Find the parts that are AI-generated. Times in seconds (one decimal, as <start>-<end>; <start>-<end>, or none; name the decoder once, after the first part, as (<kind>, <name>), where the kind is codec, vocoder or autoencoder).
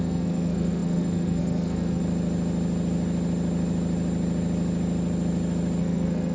0.0-2.0 (codec, SNAC); 5.8-6.3